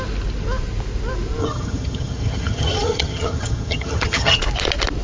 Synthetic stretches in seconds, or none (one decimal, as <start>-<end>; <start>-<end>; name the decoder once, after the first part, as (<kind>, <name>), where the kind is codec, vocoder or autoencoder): 1.4-4.4 (vocoder, HiFi-GAN)